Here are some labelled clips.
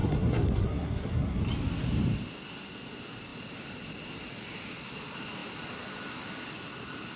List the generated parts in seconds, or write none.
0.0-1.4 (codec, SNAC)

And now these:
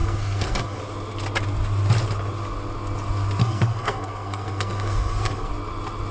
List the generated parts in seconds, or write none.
0.0-0.8 (codec, SNAC); 3.4-5.5